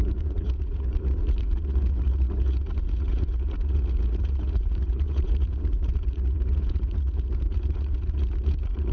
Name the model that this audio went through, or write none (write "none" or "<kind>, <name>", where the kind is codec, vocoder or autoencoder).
vocoder, Vocos